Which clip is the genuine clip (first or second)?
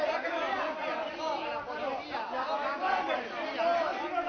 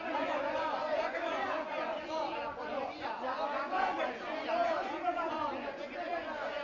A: first